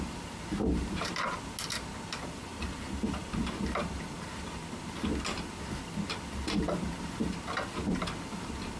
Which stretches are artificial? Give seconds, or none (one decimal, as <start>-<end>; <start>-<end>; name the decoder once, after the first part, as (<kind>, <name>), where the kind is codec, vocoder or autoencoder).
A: 2.5-3.3 (vocoder, BigVGAN v2)